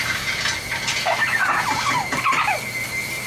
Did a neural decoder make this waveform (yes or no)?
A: yes